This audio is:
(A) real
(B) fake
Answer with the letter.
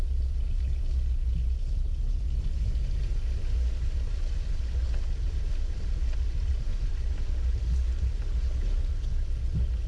A